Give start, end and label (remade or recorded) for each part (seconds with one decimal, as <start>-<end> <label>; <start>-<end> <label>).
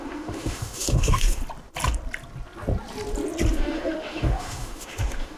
0.0-1.4 remade; 1.4-3.5 recorded; 3.5-5.4 remade